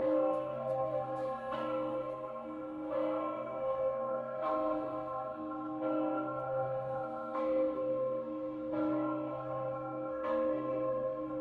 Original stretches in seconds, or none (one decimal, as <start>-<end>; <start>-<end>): none